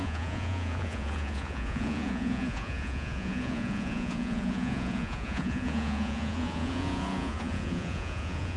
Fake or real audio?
fake